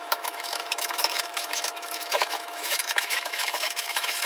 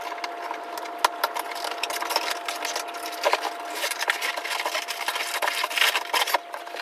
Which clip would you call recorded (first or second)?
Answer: second